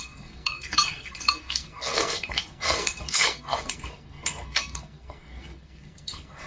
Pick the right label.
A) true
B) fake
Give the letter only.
B